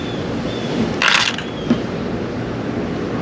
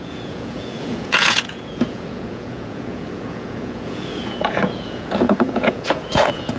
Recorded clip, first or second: first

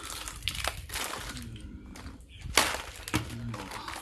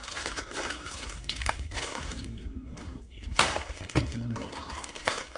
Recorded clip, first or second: first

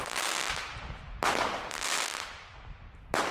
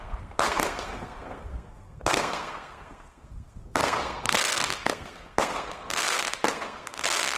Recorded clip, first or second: first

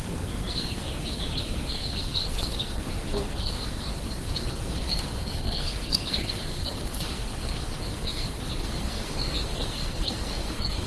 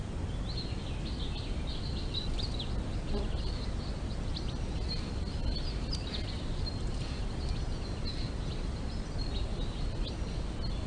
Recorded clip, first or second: second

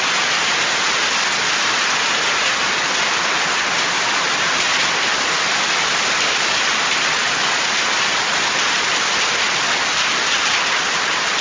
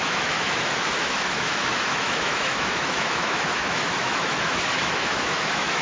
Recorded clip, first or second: first